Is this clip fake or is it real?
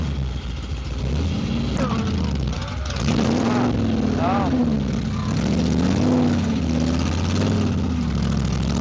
real